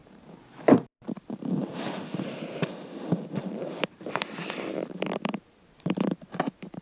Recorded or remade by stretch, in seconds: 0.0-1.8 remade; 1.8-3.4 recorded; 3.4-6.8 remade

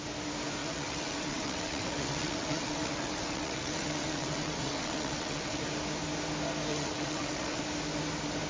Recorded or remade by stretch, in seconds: 0.0-0.6 recorded; 0.6-5.6 remade; 5.6-6.7 recorded; 6.7-7.6 remade; 7.6-8.5 recorded

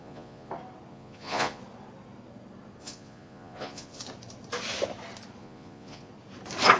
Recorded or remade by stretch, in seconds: 0.0-0.5 remade; 0.5-0.9 recorded; 0.9-1.6 remade; 1.6-2.8 recorded; 2.8-4.0 remade; 4.0-5.4 recorded; 5.4-6.1 remade; 6.1-6.8 recorded

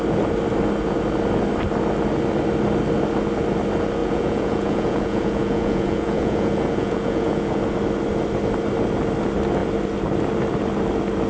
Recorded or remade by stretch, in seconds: 0.0-4.0 recorded; 4.0-7.6 remade; 7.6-11.3 recorded

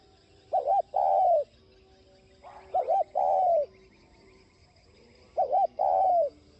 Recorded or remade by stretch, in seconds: 0.0-3.9 recorded; 3.9-4.6 remade; 4.6-6.6 recorded

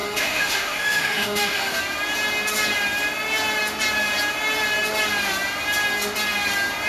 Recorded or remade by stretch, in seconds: 0.0-1.8 remade; 1.8-6.9 recorded

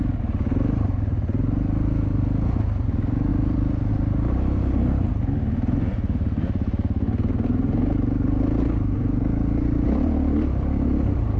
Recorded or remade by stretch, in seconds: 0.0-11.4 recorded

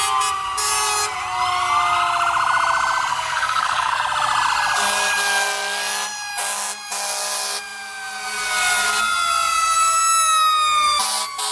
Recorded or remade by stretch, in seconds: 0.0-3.1 recorded; 3.1-4.0 remade; 4.0-11.5 recorded